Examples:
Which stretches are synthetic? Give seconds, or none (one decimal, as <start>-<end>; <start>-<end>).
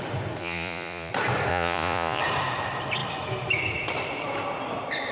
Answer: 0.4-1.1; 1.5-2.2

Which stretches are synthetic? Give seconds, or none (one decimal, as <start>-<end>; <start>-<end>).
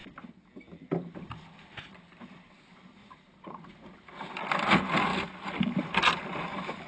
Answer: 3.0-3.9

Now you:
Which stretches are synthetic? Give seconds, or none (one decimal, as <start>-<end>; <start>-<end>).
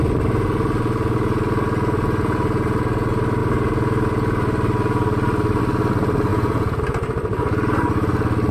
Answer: 6.3-6.8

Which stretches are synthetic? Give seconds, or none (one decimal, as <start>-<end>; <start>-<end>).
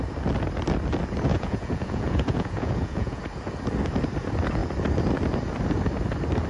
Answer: 1.3-3.2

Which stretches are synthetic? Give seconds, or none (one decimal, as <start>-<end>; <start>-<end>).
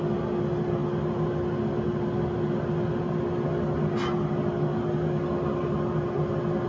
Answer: none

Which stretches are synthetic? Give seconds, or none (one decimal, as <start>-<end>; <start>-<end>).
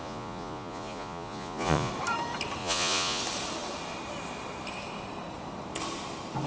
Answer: 0.0-1.9; 2.6-3.2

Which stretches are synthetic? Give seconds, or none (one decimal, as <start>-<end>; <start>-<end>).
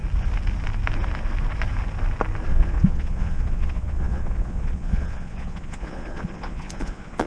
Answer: 2.5-7.3